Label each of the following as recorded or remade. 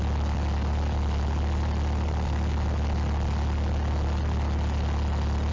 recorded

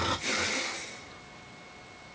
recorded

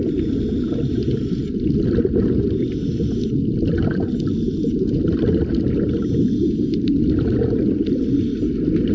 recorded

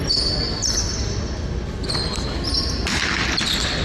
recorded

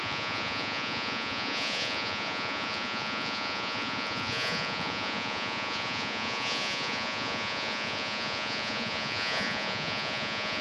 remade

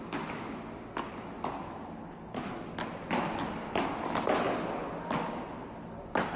recorded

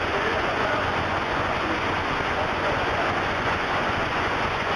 remade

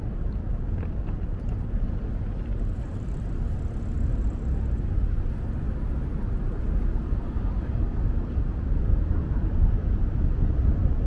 recorded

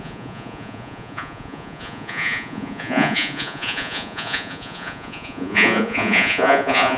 remade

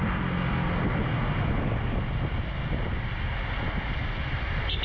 recorded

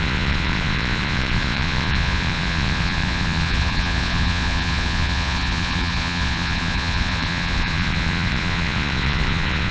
remade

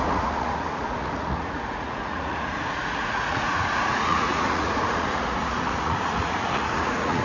remade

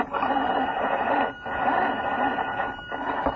recorded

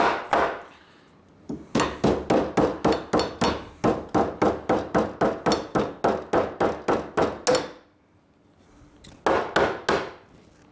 recorded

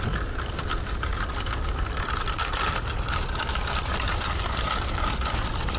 recorded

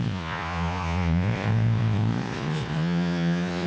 remade